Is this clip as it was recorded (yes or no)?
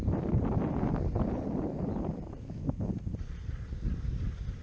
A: yes